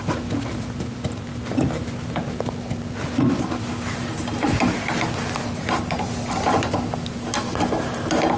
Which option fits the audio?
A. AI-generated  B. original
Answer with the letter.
B